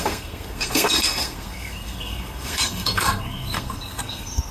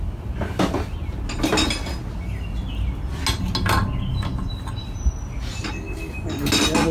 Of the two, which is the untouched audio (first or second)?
second